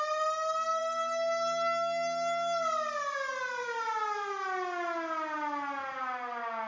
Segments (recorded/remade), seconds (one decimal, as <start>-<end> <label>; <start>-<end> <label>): 0.0-6.7 recorded